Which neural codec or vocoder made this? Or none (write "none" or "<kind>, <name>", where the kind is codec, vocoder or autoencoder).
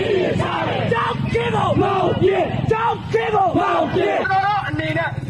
none